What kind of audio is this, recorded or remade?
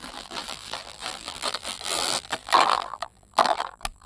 remade